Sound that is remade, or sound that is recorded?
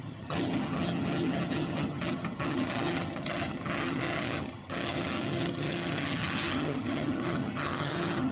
remade